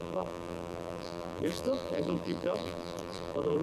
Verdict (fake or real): fake